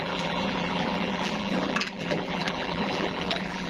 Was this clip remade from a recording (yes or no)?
yes